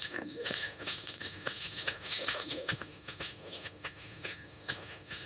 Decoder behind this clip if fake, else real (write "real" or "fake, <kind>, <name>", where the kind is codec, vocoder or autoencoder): fake, autoencoder, DAC-VAE